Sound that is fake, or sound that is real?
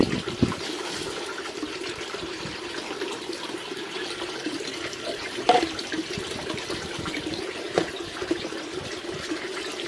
fake